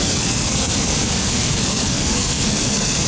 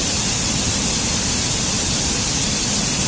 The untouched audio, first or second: second